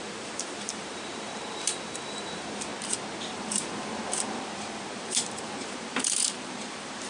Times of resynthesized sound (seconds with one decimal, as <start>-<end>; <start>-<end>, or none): 0.0-2.7; 3.2-7.1